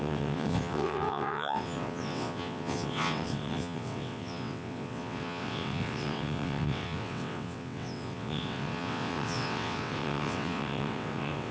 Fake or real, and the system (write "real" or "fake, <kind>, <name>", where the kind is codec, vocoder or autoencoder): fake, vocoder, WaveNeXt